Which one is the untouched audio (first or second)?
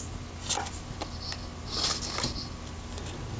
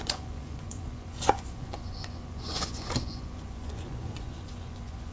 first